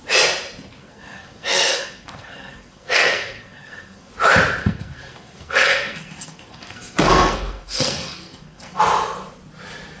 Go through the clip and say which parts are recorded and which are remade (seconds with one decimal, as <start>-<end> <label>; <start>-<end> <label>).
0.0-0.8 recorded; 0.8-4.1 remade; 4.1-4.6 recorded; 4.6-8.8 remade; 8.8-10.0 recorded